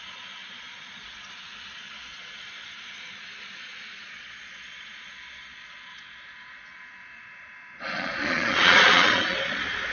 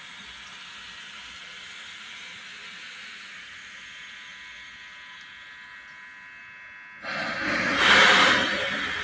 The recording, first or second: second